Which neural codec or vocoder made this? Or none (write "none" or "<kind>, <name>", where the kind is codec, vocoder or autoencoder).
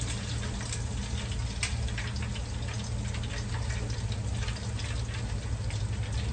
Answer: none